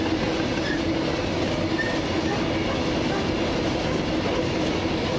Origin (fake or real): real